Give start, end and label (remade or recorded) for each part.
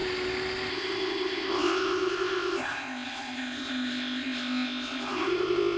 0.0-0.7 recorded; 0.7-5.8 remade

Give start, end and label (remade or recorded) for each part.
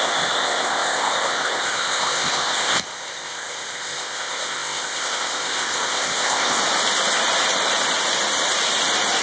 0.0-6.6 remade; 6.6-9.2 recorded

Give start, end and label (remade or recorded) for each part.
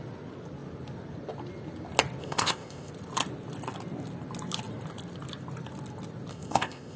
0.0-2.2 recorded; 2.2-2.9 remade; 2.9-6.3 recorded; 6.3-7.0 remade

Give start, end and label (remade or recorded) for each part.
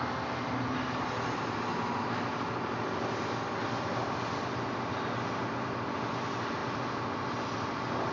0.0-8.1 recorded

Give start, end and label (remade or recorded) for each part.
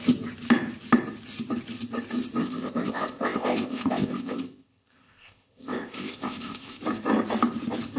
0.0-2.4 recorded; 2.4-6.8 remade; 6.8-8.0 recorded